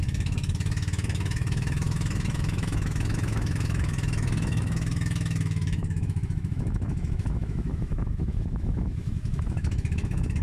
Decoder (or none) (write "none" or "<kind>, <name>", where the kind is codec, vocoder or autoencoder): autoencoder, DAC-VAE